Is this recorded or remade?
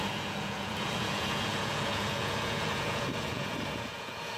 remade